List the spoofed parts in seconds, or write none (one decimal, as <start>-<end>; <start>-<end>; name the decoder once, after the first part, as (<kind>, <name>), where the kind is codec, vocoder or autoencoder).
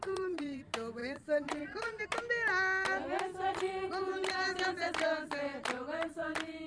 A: 0.0-0.6 (vocoder, Vocos); 1.0-2.0; 3.5-4.0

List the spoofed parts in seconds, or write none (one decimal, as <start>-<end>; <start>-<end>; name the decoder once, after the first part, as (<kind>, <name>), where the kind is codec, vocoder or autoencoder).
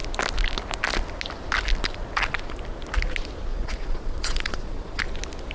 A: 3.5-5.0 (vocoder, Vocos)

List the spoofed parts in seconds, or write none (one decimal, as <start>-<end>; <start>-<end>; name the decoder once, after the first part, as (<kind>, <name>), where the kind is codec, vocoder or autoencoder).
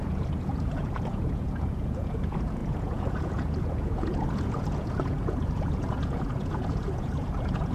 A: 0.0-7.7 (vocoder, Vocos)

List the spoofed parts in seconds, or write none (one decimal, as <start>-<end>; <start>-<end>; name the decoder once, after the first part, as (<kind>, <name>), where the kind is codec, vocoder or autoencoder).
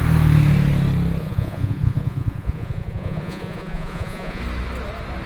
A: 1.2-4.4 (vocoder, Vocos)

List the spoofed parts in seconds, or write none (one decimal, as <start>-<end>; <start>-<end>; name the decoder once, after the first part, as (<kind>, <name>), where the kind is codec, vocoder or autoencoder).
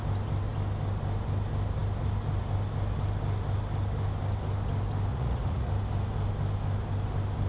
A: 5.1-5.7 (vocoder, Vocos)